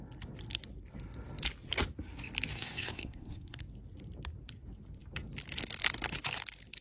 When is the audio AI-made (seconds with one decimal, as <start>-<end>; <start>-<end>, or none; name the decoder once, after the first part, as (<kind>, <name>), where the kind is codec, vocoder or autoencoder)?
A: 2.5-3.6 (codec, SNAC)